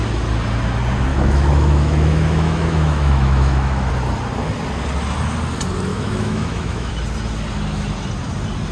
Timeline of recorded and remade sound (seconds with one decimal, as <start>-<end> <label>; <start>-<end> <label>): 0.0-1.1 recorded; 1.1-3.9 remade; 3.9-5.9 recorded; 5.9-6.9 remade; 6.9-8.7 recorded